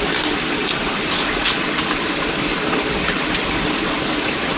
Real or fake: real